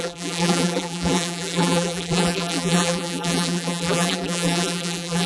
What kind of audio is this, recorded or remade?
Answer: remade